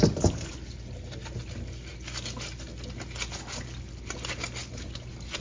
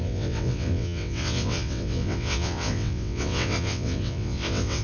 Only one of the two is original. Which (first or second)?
first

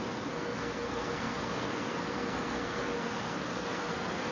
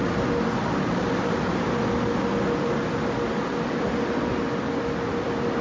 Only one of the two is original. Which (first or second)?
second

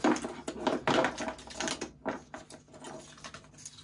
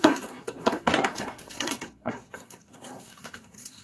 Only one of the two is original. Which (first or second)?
first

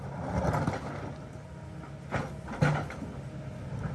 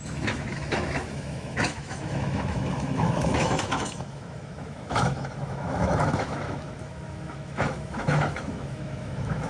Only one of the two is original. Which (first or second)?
first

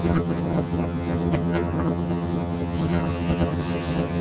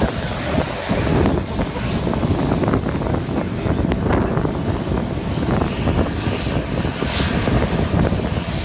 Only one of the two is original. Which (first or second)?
second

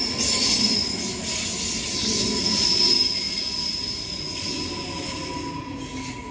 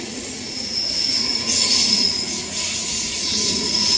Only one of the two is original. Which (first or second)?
first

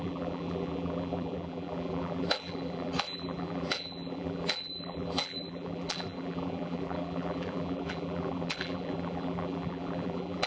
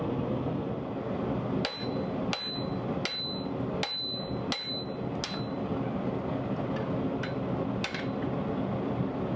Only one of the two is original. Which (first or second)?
second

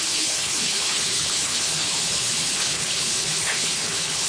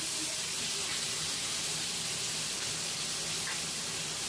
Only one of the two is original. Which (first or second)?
second